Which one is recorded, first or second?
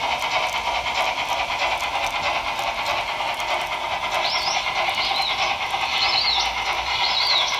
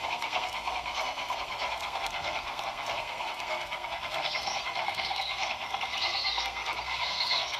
first